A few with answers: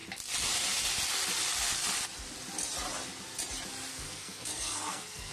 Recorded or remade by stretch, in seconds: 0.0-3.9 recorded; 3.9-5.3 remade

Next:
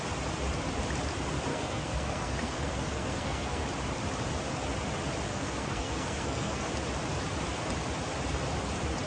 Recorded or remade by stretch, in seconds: 0.0-1.5 recorded; 1.5-3.6 remade; 3.6-5.3 recorded; 5.3-6.7 remade; 6.7-9.1 recorded

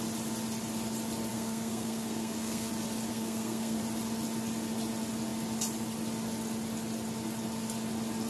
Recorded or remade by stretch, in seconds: 0.0-1.3 recorded; 1.3-2.7 remade; 2.7-3.1 recorded; 3.1-3.8 remade; 3.8-8.3 recorded

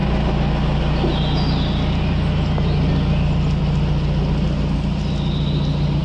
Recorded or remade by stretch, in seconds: 0.0-6.0 recorded

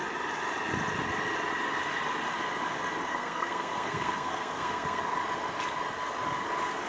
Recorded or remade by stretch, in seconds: 0.0-3.1 recorded; 3.1-5.0 remade; 5.0-6.9 recorded

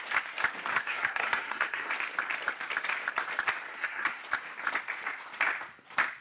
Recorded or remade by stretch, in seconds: 0.0-0.7 recorded; 0.7-1.9 remade; 1.9-3.7 recorded; 3.7-4.2 remade; 4.2-6.2 recorded

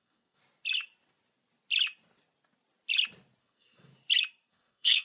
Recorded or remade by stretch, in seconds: 0.0-0.4 remade; 0.4-3.4 recorded; 3.4-3.9 remade; 3.9-4.5 recorded; 4.5-5.0 remade